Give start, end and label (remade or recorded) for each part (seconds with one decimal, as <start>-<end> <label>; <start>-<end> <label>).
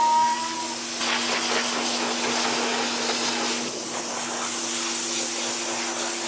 0.0-0.6 remade; 0.6-6.3 recorded